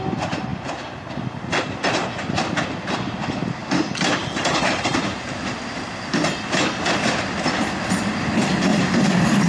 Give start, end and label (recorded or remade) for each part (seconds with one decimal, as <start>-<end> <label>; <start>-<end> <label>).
0.0-8.7 recorded; 8.7-9.5 remade